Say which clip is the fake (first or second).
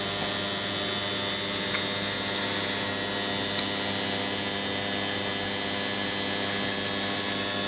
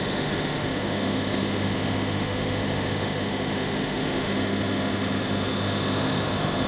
second